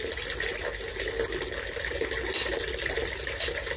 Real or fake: real